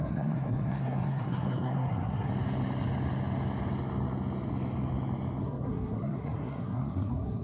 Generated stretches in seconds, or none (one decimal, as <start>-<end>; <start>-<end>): 0.0-2.3; 5.4-7.4

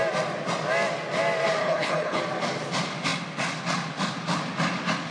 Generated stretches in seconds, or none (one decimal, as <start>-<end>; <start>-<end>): 1.6-2.2

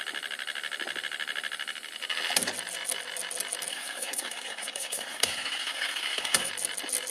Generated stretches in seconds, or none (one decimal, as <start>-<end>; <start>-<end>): 3.7-6.5

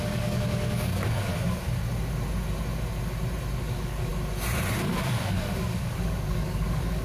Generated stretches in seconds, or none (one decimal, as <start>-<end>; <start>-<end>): 0.0-1.3; 3.6-4.1; 4.9-7.0

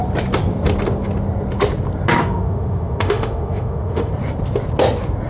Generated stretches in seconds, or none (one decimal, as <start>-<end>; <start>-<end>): 2.2-4.1

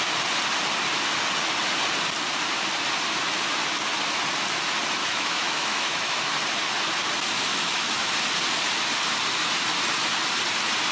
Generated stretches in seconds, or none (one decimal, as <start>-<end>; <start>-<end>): 5.0-6.2; 7.5-8.1

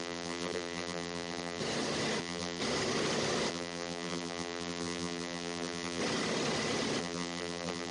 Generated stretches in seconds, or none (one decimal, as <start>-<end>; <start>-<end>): 0.0-1.6; 2.2-2.6; 3.5-6.0; 7.0-7.9